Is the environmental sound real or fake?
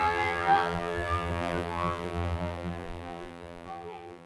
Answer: fake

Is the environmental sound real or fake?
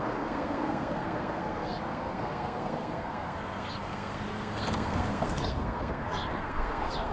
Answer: fake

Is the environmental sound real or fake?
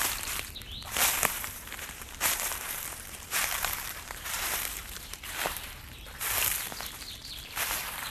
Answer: fake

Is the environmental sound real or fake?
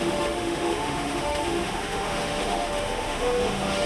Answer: fake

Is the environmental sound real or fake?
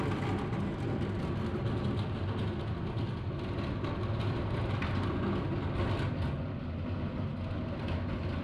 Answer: real